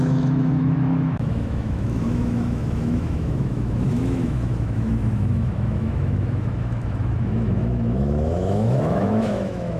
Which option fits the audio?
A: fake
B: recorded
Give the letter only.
A